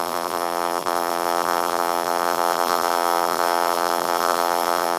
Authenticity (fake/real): fake